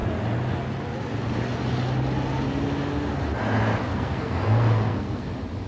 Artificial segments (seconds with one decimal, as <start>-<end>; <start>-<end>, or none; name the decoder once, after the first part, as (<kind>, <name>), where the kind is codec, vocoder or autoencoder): 3.9-5.3 (codec, SNAC)